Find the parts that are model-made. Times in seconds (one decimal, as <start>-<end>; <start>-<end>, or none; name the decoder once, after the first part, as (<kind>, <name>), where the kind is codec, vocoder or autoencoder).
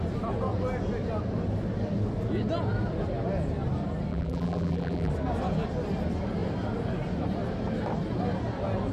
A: 4.1-5.1 (vocoder, BigVGAN v2)